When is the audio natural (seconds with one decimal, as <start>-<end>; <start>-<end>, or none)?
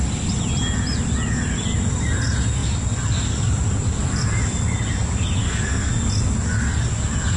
0.0-5.4; 5.9-7.4